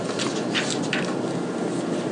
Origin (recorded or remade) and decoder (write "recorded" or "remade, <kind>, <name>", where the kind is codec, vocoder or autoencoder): recorded